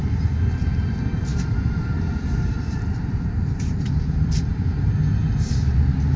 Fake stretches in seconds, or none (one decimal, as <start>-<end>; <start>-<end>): 0.0-0.9; 1.3-5.0